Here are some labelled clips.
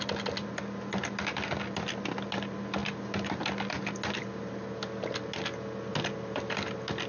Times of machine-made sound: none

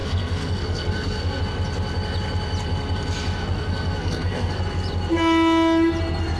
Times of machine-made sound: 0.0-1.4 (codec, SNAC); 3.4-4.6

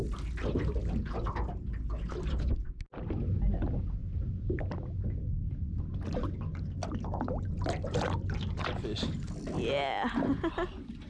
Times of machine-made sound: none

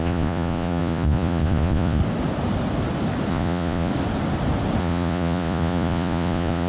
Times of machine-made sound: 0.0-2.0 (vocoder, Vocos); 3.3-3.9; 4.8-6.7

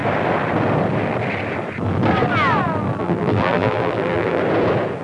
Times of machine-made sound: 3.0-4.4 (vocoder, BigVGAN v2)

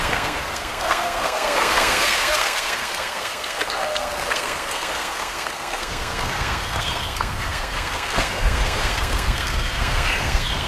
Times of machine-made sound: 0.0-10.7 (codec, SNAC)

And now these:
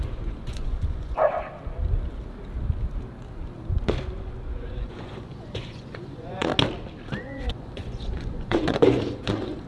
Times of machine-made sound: 0.0-1.2 (vocoder, Vocos); 4.2-6.5; 7.2-9.7